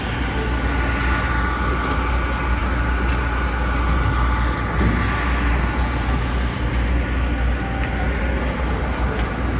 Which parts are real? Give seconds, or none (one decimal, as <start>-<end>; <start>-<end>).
0.0-9.6